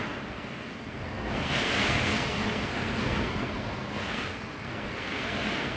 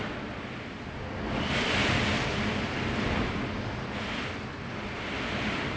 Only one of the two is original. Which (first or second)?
second